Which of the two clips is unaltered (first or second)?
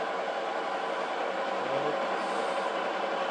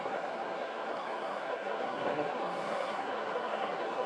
first